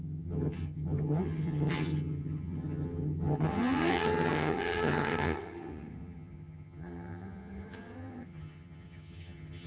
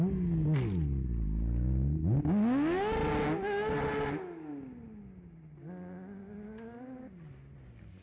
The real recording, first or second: second